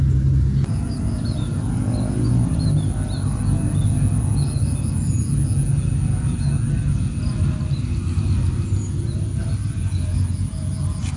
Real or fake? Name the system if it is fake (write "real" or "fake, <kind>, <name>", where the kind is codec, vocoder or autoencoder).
real